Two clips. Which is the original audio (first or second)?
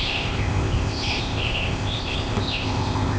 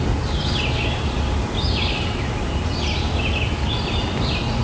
second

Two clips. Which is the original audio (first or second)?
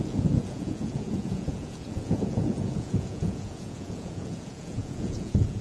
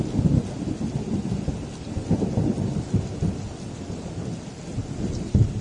second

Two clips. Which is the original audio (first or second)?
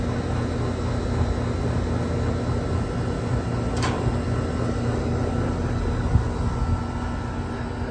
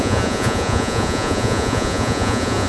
first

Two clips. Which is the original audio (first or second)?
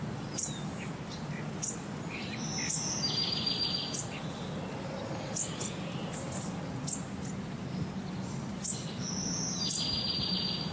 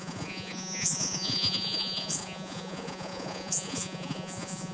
first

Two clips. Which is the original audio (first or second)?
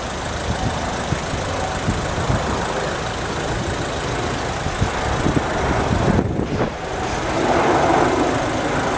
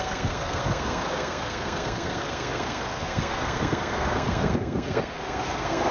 first